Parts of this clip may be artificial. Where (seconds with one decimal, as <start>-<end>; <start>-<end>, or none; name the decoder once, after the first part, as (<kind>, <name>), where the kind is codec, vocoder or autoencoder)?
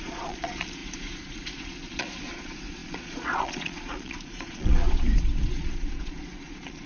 0.0-6.9 (vocoder, Vocos)